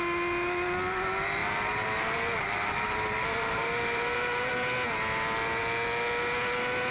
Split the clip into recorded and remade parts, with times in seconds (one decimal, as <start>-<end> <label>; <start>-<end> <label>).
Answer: 0.0-1.4 recorded; 1.4-4.5 remade; 4.5-6.9 recorded